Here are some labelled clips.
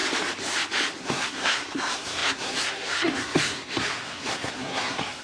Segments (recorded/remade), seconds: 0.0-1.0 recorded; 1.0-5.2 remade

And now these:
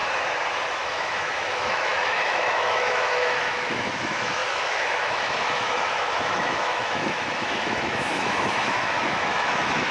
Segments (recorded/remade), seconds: 0.0-0.7 recorded; 0.7-9.9 remade

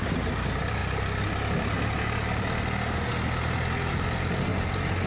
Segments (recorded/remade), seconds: 0.0-0.8 remade; 0.8-3.9 recorded; 3.9-5.1 remade

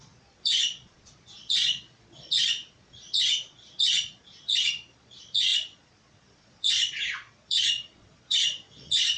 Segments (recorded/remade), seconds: 0.0-9.2 remade

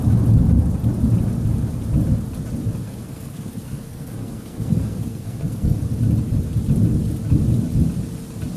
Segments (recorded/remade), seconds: 0.0-2.8 recorded; 2.8-5.9 remade; 5.9-8.6 recorded

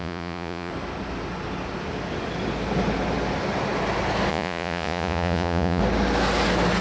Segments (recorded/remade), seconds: 0.0-0.7 remade; 0.7-4.3 recorded; 4.3-5.8 remade; 5.8-6.8 recorded

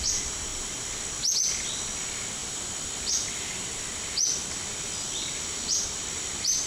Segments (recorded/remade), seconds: 0.0-0.5 recorded; 0.5-1.0 remade; 1.0-6.7 recorded